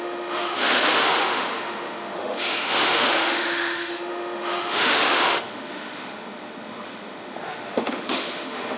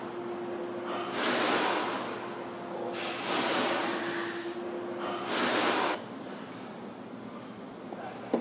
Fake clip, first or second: first